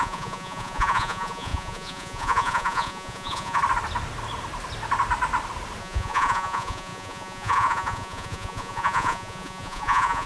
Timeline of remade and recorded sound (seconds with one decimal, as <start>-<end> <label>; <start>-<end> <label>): 0.0-3.6 remade; 3.6-5.8 recorded; 5.8-10.3 remade